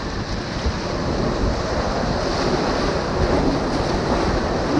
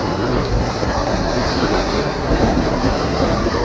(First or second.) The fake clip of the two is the second